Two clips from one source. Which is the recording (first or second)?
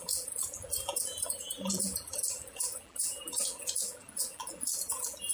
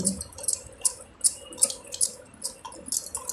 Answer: second